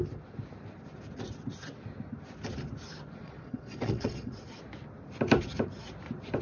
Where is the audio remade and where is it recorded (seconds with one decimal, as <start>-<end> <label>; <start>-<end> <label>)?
0.0-3.2 recorded; 3.2-4.4 remade; 4.4-6.4 recorded